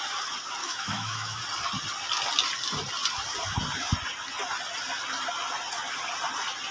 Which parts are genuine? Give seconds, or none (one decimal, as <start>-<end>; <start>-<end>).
0.0-0.6; 1.4-6.7